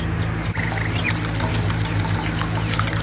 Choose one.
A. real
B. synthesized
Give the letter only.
A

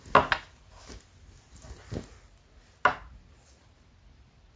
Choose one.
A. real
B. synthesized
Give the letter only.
A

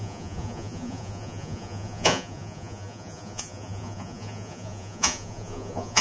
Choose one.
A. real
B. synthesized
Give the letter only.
B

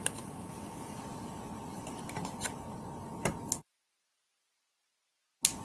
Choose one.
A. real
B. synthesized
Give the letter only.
A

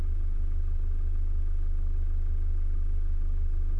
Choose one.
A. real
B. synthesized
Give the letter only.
A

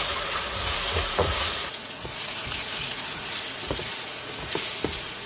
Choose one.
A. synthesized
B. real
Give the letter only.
A